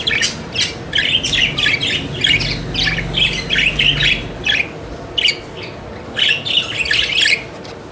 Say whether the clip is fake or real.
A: real